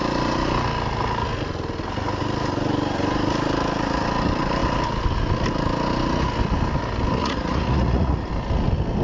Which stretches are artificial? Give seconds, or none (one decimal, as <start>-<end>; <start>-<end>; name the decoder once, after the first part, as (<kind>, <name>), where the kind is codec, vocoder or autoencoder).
7.2-8.3 (vocoder, Vocos)